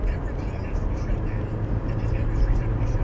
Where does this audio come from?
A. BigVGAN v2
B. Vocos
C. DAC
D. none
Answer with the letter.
A